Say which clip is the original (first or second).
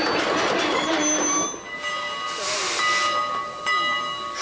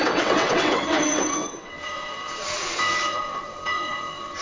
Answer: first